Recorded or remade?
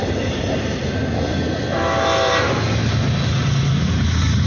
recorded